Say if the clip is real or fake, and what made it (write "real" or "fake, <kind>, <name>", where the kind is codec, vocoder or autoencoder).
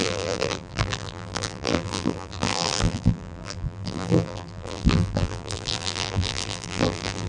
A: fake, vocoder, BigVGAN v2